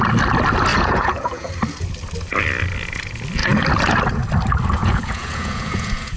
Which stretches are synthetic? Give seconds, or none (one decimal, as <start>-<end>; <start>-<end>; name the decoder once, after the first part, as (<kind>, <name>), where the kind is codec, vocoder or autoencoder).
0.7-1.5 (vocoder, Vocos); 4.8-6.2